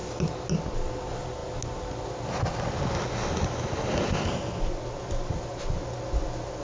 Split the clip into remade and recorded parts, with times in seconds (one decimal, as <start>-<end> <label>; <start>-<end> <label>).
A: 0.0-6.6 recorded